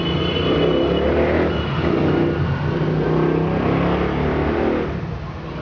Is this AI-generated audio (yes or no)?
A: no